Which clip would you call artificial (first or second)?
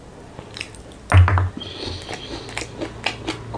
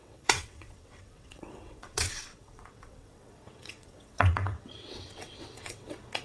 second